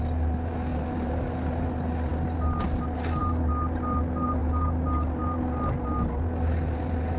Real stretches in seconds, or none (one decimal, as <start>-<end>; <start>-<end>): 0.0-0.7; 1.7-7.2